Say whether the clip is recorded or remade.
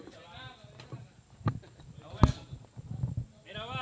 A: recorded